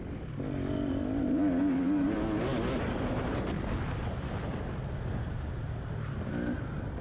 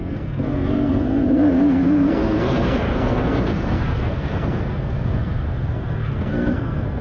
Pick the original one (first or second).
first